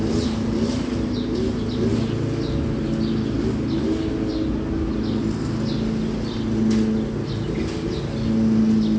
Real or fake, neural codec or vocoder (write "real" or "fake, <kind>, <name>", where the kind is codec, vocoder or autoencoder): real